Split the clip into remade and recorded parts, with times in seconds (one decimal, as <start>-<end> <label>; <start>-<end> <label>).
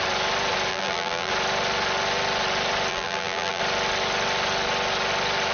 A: 0.0-0.7 recorded; 0.7-1.3 remade; 1.3-2.9 recorded; 2.9-3.6 remade; 3.6-5.5 recorded